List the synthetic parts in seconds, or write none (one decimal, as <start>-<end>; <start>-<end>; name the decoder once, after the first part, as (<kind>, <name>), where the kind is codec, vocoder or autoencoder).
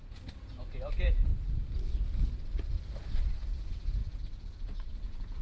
0.0-1.3 (vocoder, Vocos); 3.3-5.4